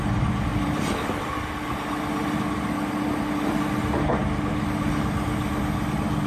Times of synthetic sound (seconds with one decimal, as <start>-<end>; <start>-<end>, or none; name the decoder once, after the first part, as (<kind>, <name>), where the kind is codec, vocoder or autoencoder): 0.5-1.3 (vocoder, BigVGAN v2)